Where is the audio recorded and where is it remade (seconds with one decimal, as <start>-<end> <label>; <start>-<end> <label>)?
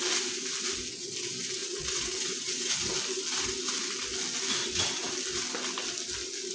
0.0-1.6 recorded; 1.6-2.7 remade; 2.7-4.6 recorded; 4.6-5.1 remade; 5.1-6.5 recorded